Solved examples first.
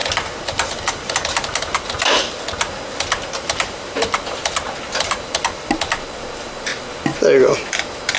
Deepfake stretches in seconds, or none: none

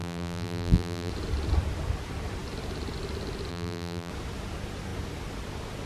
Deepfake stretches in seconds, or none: 0.0-1.1 (vocoder, BigVGAN v2); 3.5-4.1